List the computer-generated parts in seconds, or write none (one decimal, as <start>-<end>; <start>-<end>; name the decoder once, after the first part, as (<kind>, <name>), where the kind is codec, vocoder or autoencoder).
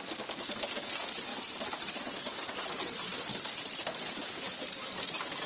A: 1.3-2.0 (vocoder, BigVGAN v2); 3.1-4.2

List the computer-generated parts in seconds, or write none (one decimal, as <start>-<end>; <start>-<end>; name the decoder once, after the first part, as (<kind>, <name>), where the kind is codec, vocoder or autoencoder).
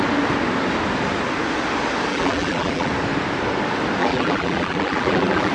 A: 2.1-2.9 (vocoder, BigVGAN v2); 4.0-5.5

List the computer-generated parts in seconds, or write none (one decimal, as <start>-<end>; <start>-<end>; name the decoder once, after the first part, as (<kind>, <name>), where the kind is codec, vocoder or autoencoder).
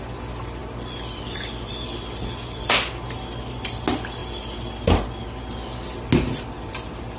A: none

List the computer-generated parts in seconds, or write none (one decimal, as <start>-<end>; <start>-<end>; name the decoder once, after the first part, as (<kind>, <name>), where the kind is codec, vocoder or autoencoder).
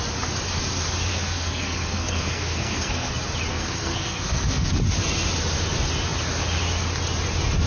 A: 1.1-3.1 (codec, SNAC); 3.5-4.7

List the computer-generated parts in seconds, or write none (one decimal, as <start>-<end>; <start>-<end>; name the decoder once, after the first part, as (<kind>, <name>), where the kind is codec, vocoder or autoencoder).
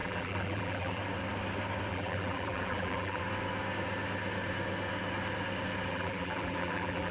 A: 0.0-1.0 (vocoder, BigVGAN v2); 1.9-3.2; 5.9-7.1